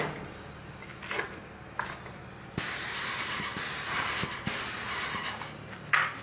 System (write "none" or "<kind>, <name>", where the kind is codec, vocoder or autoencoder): none